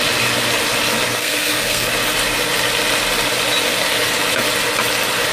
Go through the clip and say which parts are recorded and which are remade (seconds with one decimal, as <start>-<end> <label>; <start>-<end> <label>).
0.0-1.2 recorded; 1.2-1.9 remade; 1.9-5.3 recorded